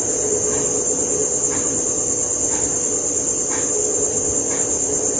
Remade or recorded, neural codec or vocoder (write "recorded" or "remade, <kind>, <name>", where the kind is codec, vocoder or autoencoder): recorded